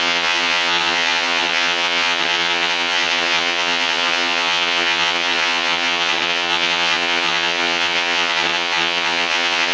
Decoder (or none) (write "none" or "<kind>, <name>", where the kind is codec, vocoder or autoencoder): vocoder, HiFi-GAN